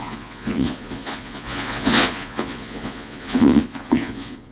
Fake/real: fake